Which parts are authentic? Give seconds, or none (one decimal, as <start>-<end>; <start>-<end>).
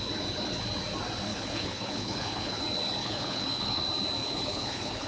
0.0-1.3; 2.6-3.0; 3.8-4.2